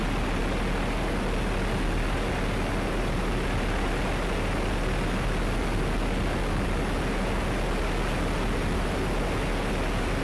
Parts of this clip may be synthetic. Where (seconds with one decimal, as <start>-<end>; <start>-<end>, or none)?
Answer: none